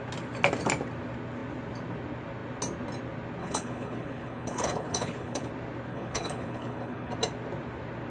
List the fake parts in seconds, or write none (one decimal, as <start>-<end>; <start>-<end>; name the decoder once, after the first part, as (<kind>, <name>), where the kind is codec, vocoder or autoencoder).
3.4-5.5 (codec, HILCodec); 5.9-7.1